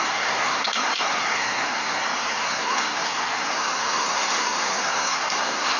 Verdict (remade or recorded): remade